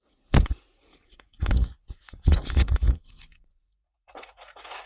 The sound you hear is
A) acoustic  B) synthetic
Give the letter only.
B